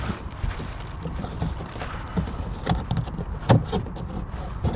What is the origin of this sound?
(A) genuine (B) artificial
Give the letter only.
B